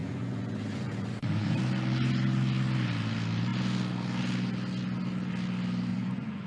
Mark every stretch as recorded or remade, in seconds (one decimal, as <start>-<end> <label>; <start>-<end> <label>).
0.0-1.6 remade; 1.6-5.9 recorded; 5.9-6.5 remade